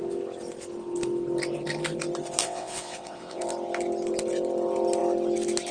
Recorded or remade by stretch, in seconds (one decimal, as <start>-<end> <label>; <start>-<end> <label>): 0.0-2.4 recorded; 2.4-3.4 remade; 3.4-5.7 recorded